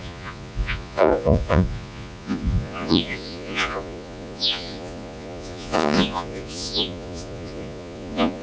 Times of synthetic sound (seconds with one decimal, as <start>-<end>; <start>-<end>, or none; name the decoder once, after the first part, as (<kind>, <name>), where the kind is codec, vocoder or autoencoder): 0.0-8.4 (vocoder, Vocos)